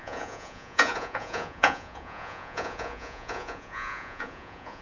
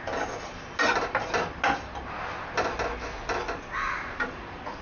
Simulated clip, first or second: first